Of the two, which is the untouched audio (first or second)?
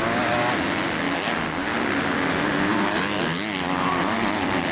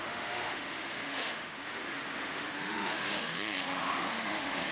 first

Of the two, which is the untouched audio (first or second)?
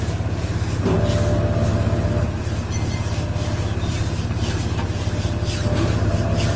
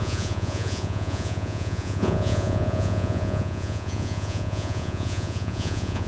first